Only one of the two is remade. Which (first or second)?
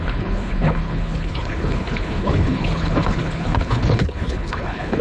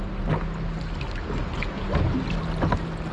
first